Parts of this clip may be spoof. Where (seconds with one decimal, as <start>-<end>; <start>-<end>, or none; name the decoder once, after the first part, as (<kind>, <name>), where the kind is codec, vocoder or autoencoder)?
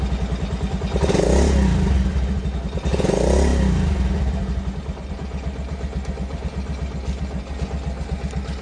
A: none